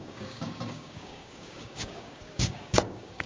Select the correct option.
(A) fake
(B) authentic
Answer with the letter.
A